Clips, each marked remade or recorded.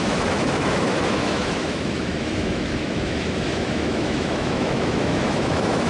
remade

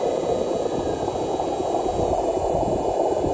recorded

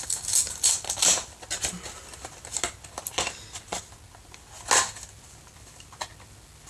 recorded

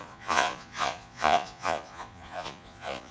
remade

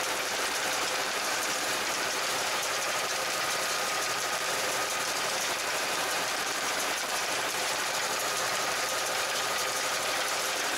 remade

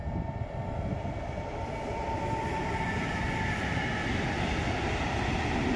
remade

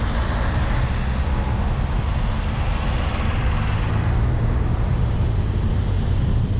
recorded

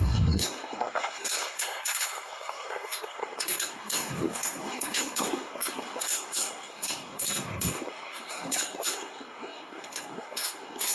remade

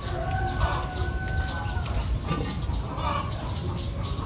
recorded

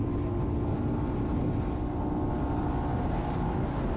recorded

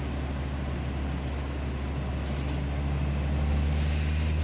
recorded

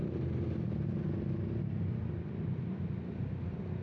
recorded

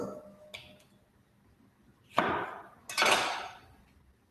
recorded